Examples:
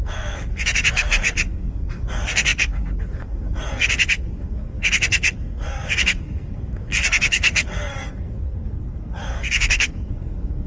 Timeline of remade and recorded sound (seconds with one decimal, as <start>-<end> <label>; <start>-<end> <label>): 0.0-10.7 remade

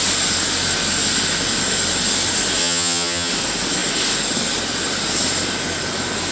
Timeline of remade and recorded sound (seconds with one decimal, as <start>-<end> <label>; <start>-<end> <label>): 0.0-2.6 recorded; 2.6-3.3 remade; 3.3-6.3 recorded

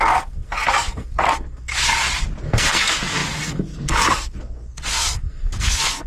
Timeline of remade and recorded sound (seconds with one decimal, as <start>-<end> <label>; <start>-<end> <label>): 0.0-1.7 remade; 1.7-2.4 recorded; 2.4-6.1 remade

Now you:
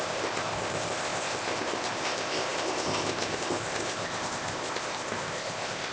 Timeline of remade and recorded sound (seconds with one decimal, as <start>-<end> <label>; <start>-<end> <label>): 0.0-5.9 remade

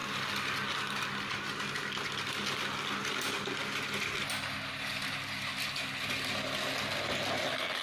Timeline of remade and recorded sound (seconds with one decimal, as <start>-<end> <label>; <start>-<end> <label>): 0.0-7.8 recorded

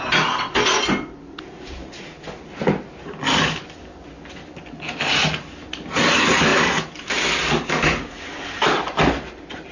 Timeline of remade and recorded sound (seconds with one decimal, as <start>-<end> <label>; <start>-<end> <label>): 0.0-9.7 recorded